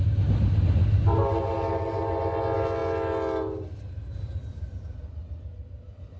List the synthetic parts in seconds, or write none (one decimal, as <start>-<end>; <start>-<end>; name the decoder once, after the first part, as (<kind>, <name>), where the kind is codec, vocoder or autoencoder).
none